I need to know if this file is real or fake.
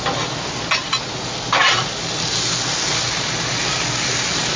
real